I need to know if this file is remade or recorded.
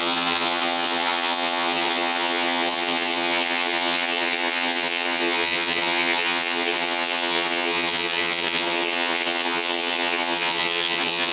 remade